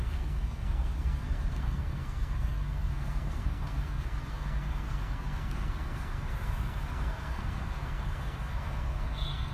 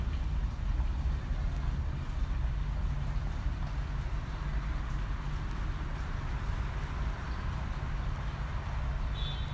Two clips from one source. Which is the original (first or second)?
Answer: second